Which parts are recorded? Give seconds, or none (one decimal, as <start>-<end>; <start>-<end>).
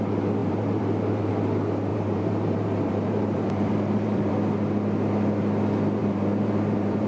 0.0-0.4; 1.3-1.9; 4.3-6.0